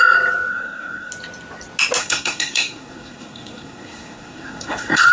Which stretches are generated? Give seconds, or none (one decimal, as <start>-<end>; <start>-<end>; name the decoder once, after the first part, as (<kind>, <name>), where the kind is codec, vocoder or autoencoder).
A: 0.5-1.1 (codec, SNAC); 2.0-5.1